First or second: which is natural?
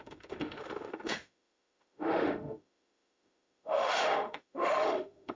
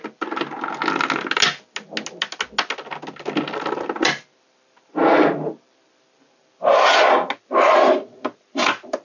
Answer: second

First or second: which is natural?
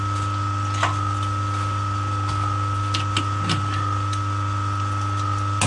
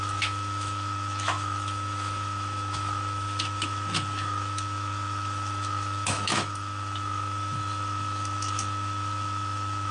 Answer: first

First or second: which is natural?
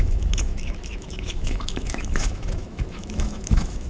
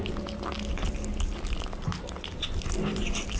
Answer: second